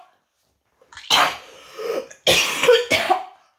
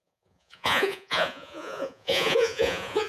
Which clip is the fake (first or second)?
second